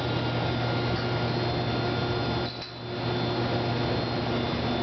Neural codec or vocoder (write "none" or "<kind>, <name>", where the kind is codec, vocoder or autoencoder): none